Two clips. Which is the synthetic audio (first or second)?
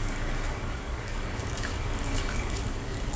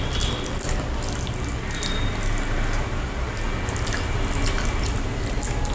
first